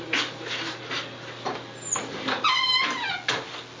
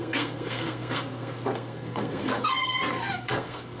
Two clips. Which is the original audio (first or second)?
first